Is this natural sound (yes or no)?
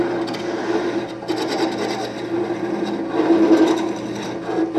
yes